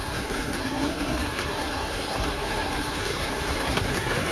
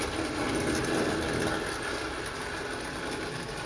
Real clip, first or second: second